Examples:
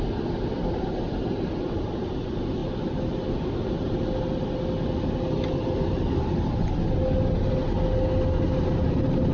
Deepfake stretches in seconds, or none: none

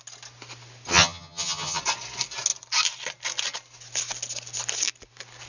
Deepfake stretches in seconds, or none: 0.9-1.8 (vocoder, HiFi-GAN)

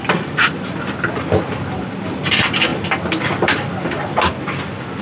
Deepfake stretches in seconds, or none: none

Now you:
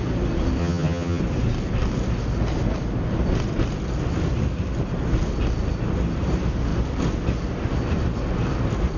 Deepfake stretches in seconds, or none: 0.6-1.2 (vocoder, HiFi-GAN)